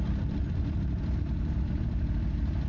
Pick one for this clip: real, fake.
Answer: real